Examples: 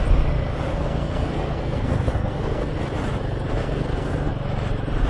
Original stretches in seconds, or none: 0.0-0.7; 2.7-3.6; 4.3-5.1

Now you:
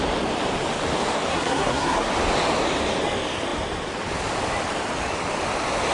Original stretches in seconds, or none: 0.0-1.3; 2.1-5.9

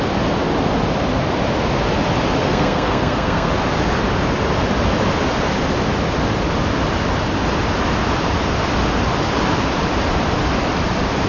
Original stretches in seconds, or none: 0.0-2.4; 3.5-11.3

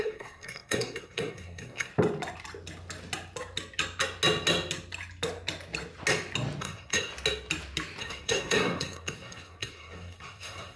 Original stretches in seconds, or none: 1.9-6.6; 7.1-8.0

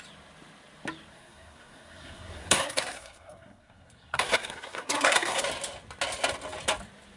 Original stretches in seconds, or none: 0.0-1.1; 5.4-7.2

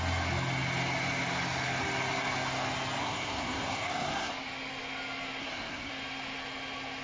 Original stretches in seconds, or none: 0.0-3.0; 4.3-5.4; 5.9-7.0

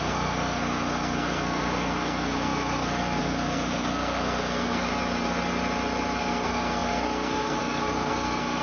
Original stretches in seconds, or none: 4.9-6.2

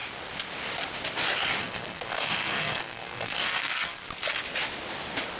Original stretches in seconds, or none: 0.0-1.6; 4.0-5.4